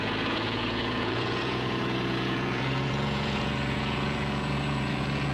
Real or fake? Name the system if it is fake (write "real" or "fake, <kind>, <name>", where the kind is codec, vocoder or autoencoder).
fake, vocoder, Vocos